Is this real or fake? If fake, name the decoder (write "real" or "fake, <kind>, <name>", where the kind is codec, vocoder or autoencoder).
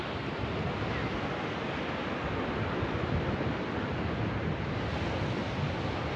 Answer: real